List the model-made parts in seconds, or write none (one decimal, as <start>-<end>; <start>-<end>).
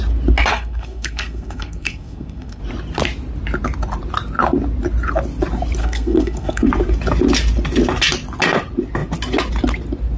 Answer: 0.5-2.6; 5.8-6.7